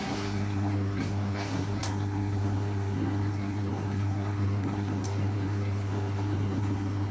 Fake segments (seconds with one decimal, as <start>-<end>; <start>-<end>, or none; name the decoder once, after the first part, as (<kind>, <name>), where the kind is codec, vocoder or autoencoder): 0.0-7.1 (codec, SNAC)